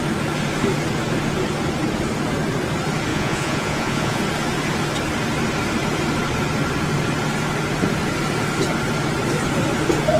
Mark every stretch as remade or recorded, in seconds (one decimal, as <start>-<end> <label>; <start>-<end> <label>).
0.0-3.1 recorded; 3.1-4.2 remade; 4.2-10.2 recorded